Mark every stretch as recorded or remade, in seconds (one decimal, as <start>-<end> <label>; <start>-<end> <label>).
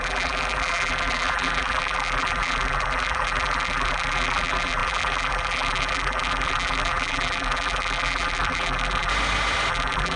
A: 0.0-9.1 remade; 9.1-9.7 recorded; 9.7-10.2 remade